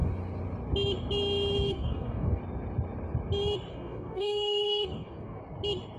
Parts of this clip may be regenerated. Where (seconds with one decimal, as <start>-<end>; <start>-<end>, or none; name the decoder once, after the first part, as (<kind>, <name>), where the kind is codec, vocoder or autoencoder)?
1.7-2.4 (codec, DAC); 3.7-5.4